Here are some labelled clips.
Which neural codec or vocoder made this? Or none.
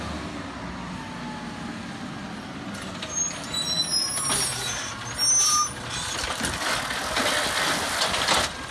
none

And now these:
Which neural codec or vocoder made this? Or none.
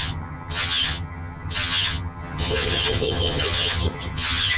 vocoder, HiFi-GAN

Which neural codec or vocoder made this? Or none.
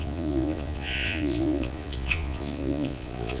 vocoder, Vocos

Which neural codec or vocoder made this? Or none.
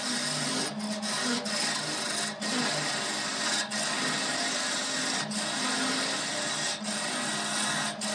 none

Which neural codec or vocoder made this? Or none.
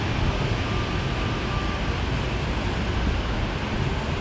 none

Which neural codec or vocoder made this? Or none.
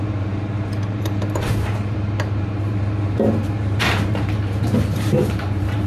vocoder, BigVGAN v2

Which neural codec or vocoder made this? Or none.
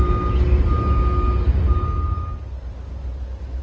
none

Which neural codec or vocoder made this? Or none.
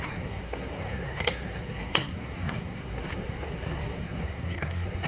codec, SNAC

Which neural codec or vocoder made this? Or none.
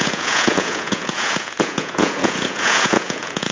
vocoder, Vocos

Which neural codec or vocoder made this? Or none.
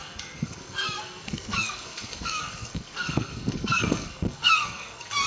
codec, SNAC